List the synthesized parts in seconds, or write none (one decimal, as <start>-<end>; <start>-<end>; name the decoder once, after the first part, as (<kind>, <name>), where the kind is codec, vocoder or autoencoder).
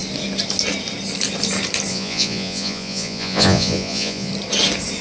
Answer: 1.9-4.3 (vocoder, Vocos)